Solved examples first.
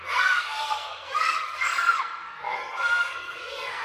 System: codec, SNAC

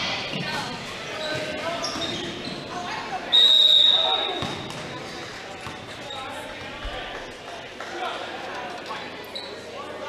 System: none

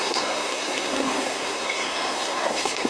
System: codec, SNAC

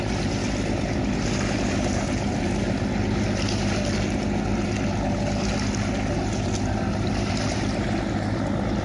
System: none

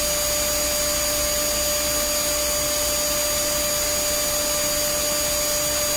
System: none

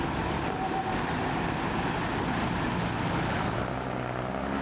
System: none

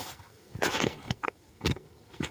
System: codec, SNAC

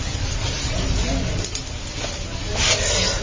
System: none